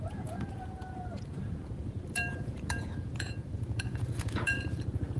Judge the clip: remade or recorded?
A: remade